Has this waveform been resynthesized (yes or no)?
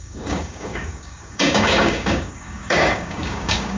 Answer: yes